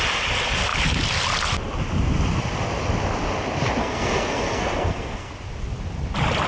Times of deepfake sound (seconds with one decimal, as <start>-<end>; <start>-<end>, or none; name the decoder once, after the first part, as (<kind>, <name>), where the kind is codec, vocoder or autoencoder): 3.8-5.3 (codec, SNAC)